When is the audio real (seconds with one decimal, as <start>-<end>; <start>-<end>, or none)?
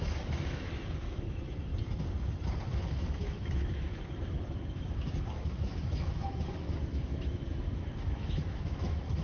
1.7-2.7